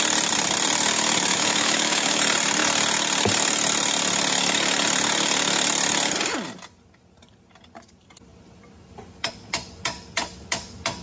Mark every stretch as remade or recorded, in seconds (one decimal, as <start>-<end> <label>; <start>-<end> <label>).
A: 0.0-1.3 recorded; 1.3-2.2 remade; 2.2-11.0 recorded

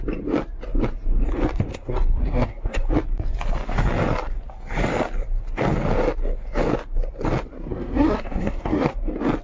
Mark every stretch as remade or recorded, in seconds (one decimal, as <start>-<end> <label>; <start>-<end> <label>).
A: 0.0-1.7 recorded; 1.7-2.9 remade; 2.9-7.5 recorded; 7.5-9.0 remade; 9.0-9.4 recorded